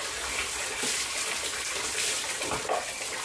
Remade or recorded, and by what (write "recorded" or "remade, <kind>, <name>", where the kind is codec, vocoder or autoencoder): recorded